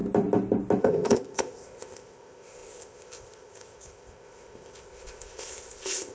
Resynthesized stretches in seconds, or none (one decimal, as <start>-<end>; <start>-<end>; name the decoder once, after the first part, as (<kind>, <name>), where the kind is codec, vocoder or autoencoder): 0.8-6.1 (codec, ZipCodec)